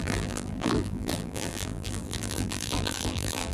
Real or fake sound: fake